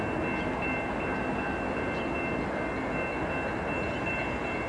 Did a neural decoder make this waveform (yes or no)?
no